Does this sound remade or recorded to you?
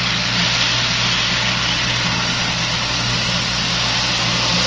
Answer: remade